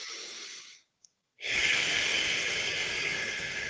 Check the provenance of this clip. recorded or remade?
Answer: remade